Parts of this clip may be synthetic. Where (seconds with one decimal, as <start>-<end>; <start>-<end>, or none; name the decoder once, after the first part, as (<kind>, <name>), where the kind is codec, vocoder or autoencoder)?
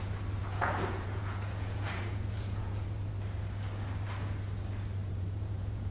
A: 0.4-3.1 (vocoder, Vocos); 5.0-5.9